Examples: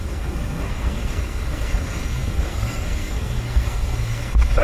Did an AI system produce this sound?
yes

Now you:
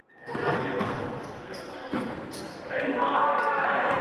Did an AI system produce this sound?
yes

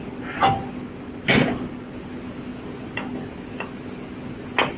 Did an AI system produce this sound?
no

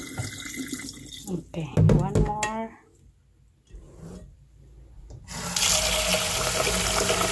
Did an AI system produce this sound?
no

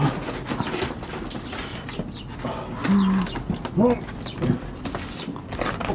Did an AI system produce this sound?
no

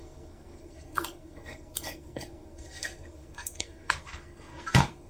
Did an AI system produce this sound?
yes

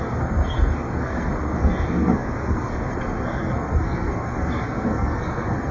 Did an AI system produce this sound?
yes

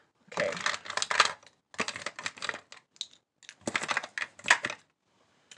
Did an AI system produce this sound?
no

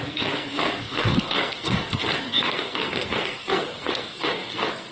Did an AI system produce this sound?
yes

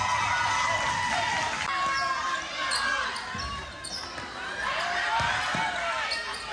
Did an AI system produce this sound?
no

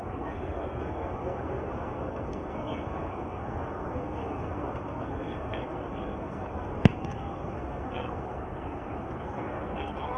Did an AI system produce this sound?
yes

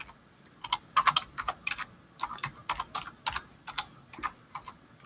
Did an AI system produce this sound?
no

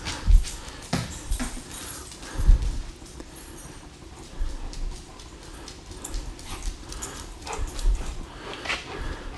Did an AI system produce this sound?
no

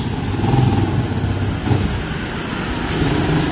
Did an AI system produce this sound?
no